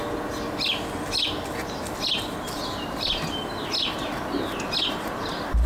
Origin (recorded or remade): recorded